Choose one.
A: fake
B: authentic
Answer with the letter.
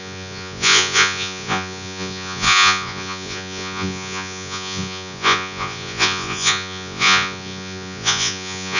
A